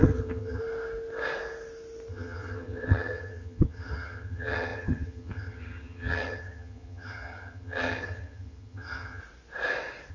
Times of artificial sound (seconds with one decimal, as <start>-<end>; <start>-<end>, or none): 0.0-0.6; 2.1-9.2